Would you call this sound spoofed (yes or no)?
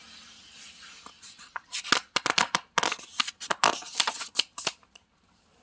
no